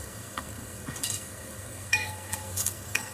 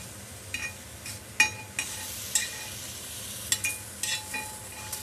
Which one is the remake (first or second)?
first